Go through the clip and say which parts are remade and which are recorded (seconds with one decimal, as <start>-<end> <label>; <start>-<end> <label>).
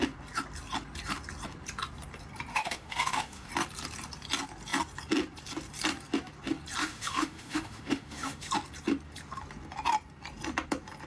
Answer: 0.0-2.5 recorded; 2.5-3.5 remade; 3.5-6.8 recorded; 6.8-8.5 remade; 8.5-11.1 recorded